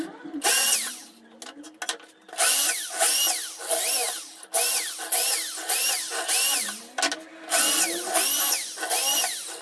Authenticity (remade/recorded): recorded